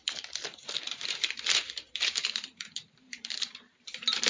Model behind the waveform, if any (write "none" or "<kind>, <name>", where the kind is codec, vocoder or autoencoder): vocoder, BigVGAN v2